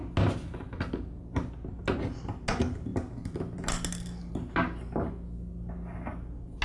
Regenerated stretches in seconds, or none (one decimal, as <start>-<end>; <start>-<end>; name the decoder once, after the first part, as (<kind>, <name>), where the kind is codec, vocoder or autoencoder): none